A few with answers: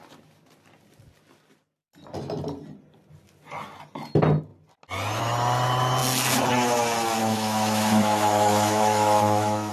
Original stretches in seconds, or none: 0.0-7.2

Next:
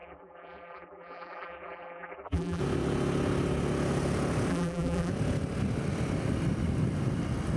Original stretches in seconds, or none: 2.6-4.5; 5.1-7.6